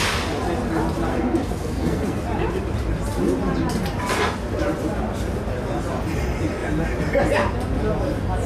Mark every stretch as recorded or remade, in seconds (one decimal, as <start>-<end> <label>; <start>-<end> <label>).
0.0-1.1 recorded; 1.1-2.2 remade; 2.2-8.5 recorded